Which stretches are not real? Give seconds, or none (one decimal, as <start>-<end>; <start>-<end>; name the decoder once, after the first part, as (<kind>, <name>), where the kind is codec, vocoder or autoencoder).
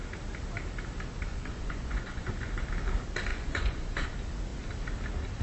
1.3-2.5 (vocoder, Vocos); 3.3-4.1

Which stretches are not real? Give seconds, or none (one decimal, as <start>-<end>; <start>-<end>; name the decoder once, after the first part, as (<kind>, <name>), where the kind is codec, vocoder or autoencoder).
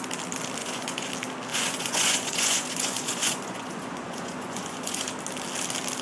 0.6-1.1 (vocoder, Vocos); 1.5-5.1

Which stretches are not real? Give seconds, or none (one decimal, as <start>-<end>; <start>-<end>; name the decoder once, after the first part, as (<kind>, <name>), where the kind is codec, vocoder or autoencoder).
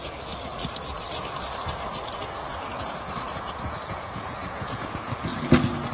2.4-5.5 (vocoder, Vocos)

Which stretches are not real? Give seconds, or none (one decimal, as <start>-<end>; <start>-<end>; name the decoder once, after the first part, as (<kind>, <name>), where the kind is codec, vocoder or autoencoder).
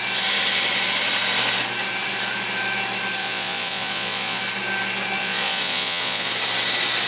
3.2-4.4 (vocoder, Vocos); 5.2-6.3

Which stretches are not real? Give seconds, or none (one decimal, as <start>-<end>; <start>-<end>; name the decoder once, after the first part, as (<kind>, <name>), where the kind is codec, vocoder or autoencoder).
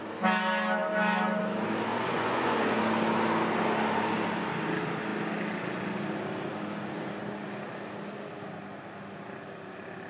1.9-2.8 (vocoder, Vocos)